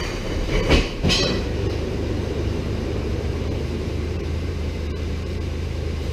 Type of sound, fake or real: fake